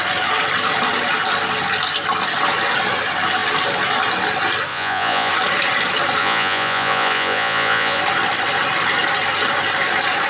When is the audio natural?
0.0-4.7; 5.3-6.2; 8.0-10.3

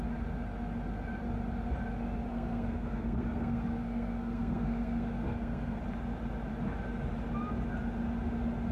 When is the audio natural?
0.0-2.3; 5.8-8.7